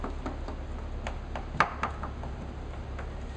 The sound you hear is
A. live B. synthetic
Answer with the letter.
A